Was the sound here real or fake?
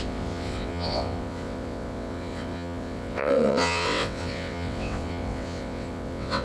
fake